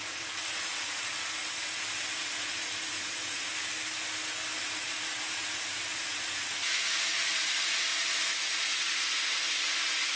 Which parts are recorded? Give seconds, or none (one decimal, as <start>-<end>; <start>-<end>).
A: 1.1-2.2; 3.5-4.6